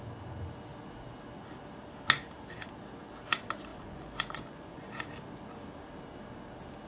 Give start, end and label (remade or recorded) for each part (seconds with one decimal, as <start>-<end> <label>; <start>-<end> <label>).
0.0-3.7 recorded; 3.7-4.9 remade; 4.9-6.9 recorded

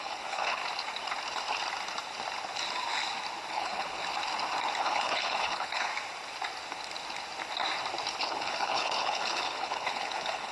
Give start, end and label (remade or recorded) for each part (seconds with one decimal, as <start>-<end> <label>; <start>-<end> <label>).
0.0-0.6 remade; 0.6-3.5 recorded; 3.5-4.0 remade; 4.0-4.8 recorded; 4.8-5.9 remade; 5.9-8.2 recorded; 8.2-10.5 remade

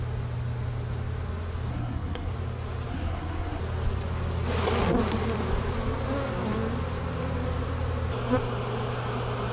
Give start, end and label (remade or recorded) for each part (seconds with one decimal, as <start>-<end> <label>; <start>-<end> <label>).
0.0-1.7 recorded; 1.7-2.3 remade; 2.3-2.9 recorded; 2.9-3.6 remade; 3.6-9.5 recorded

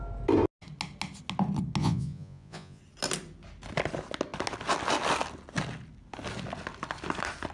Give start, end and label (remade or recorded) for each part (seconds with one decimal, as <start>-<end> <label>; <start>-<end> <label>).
0.0-1.8 recorded; 1.8-2.8 remade; 2.8-7.5 recorded

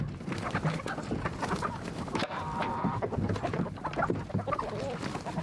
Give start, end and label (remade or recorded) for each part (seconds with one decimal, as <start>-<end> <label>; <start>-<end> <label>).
0.0-1.4 recorded; 1.4-3.0 remade; 3.0-5.4 recorded